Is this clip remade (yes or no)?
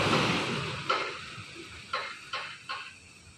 no